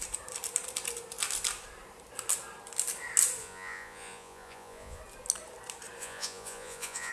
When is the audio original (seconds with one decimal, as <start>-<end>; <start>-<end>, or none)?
0.0-3.4; 5.0-6.0